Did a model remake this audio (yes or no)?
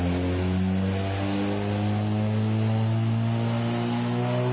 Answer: no